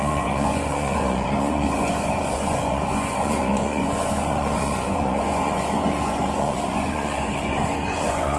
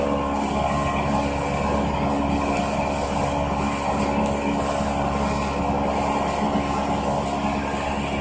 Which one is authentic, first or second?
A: second